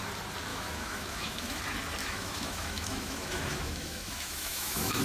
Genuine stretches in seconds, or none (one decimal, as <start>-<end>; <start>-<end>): 0.0-0.5; 1.6-2.0